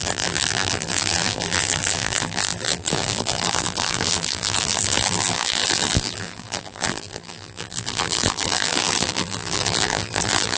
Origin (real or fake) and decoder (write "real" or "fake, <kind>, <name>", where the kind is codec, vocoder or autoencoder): fake, vocoder, BigVGAN v2